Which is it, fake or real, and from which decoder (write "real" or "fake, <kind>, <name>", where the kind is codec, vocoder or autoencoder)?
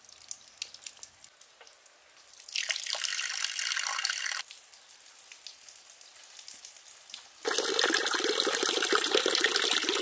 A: real